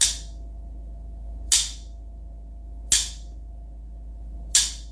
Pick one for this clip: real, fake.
real